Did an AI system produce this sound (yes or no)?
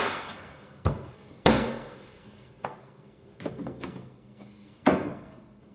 yes